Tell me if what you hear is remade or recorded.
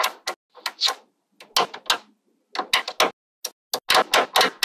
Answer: recorded